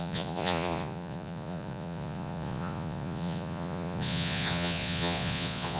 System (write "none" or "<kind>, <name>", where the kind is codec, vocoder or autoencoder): vocoder, Vocos